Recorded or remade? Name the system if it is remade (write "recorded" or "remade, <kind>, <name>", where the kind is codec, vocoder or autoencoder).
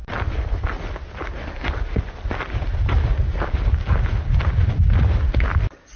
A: recorded